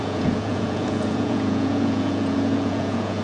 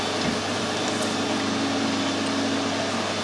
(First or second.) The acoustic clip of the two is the second